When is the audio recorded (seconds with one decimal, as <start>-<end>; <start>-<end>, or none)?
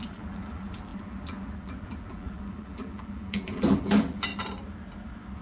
4.3-5.4